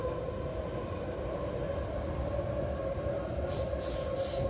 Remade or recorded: recorded